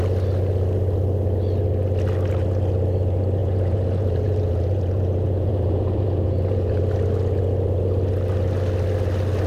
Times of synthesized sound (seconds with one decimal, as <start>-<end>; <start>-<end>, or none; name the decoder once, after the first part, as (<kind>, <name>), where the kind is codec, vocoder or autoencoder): 3.4-6.8 (vocoder, Vocos)